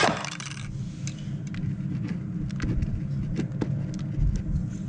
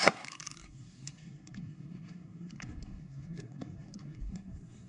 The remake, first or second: second